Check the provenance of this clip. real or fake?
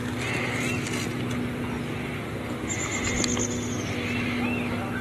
real